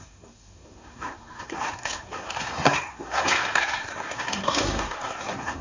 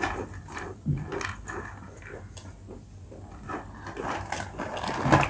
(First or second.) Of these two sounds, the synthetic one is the first